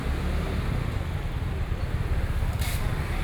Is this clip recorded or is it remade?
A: remade